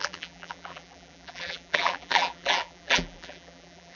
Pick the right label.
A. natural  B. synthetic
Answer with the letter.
B